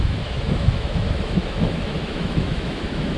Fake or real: fake